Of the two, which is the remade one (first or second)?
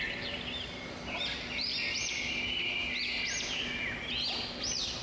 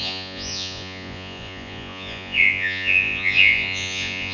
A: second